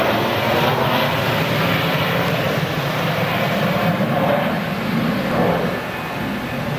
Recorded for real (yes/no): yes